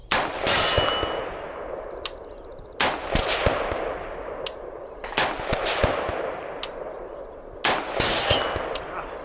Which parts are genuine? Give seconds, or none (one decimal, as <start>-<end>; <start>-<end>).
1.5-9.2